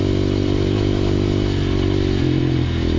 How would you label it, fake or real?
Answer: real